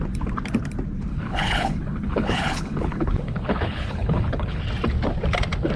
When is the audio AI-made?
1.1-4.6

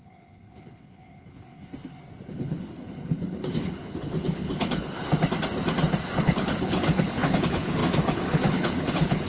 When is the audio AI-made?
0.0-1.7; 2.3-5.0; 6.2-9.3